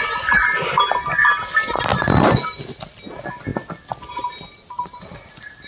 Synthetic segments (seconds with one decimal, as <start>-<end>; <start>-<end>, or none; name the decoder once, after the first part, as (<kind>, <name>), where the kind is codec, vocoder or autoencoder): none